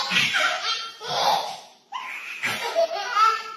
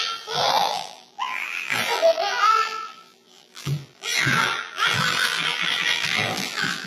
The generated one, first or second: second